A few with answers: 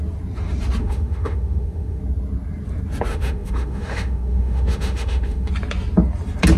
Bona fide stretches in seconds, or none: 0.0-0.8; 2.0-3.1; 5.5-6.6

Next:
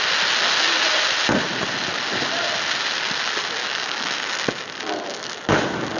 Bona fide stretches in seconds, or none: 0.0-3.6; 4.3-6.0

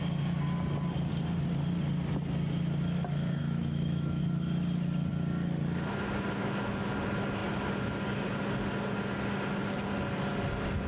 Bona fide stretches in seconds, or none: 0.0-3.4; 4.2-10.9